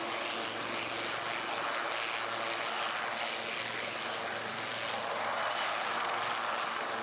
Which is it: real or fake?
real